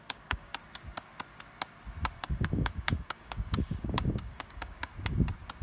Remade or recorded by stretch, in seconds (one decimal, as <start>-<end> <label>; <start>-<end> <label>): 0.0-0.5 remade; 0.5-2.2 recorded; 2.2-4.9 remade; 4.9-5.6 recorded